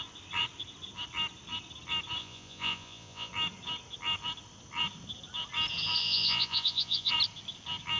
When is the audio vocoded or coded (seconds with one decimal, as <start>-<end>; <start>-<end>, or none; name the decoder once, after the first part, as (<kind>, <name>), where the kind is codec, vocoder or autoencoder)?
2.2-3.3 (vocoder, Vocos); 6.0-7.1